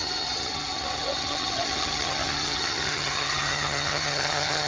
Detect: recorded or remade remade